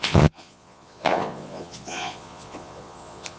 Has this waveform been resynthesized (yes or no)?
yes